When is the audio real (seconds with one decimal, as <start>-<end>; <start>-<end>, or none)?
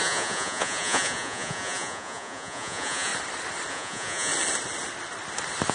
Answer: 3.1-3.7; 4.3-5.7